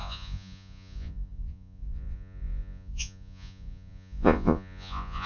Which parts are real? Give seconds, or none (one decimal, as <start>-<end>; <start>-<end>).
none